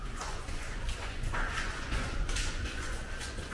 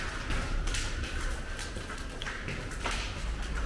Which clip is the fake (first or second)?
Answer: first